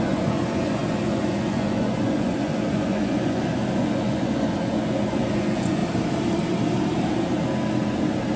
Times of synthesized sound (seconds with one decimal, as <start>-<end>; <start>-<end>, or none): 0.0-5.8

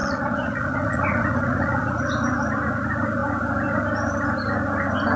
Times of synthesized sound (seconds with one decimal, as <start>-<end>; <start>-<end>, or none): 0.0-2.0

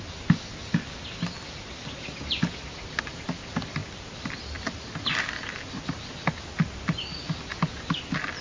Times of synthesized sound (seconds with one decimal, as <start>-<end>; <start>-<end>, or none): none

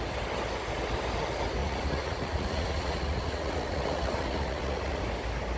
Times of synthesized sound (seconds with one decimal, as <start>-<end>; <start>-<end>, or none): 1.6-5.0

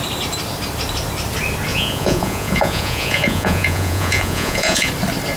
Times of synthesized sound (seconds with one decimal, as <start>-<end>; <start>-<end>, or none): 1.7-4.9

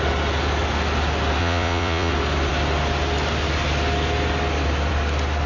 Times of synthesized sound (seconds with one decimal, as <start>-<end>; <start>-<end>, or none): 1.4-2.1

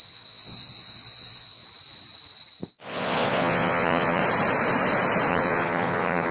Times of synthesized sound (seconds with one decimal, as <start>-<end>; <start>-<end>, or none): 0.0-1.6; 2.7-4.2; 5.3-6.3